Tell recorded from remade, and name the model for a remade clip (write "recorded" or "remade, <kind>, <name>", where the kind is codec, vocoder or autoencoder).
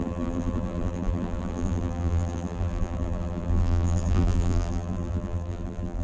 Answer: remade, vocoder, BigVGAN v2